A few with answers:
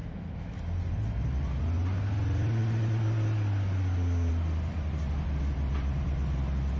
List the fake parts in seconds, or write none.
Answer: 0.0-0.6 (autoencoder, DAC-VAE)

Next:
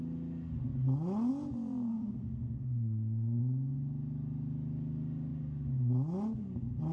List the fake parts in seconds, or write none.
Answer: 1.9-3.4 (codec, SNAC)

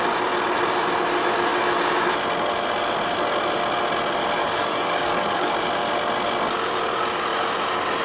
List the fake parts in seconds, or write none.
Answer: 4.4-5.5 (codec, DAC)

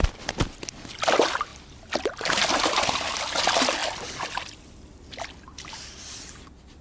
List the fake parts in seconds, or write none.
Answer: none

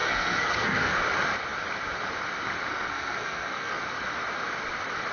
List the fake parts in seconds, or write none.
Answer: 0.0-1.0 (codec, SNAC); 2.7-3.8

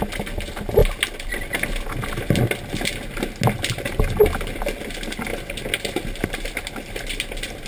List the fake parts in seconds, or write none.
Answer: none